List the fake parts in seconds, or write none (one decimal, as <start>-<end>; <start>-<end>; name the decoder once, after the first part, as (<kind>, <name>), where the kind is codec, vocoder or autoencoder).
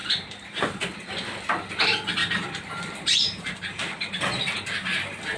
0.0-0.6 (vocoder, BigVGAN v2); 2.2-4.2